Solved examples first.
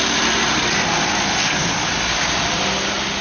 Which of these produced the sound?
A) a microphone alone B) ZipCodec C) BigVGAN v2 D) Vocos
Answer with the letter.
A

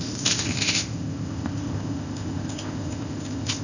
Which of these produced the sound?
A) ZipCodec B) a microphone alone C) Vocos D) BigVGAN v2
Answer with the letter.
A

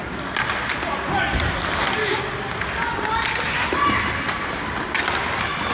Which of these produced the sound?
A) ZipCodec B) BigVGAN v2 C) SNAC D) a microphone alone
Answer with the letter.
D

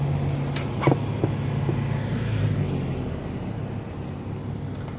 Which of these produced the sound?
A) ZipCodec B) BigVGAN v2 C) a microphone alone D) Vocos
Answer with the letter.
C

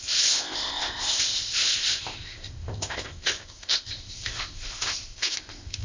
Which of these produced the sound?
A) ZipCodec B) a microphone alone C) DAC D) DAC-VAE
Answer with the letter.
A